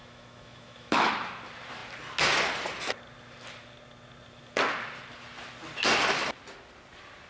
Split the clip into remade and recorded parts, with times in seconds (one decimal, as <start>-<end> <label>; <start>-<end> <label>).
0.0-1.1 remade; 1.1-7.3 recorded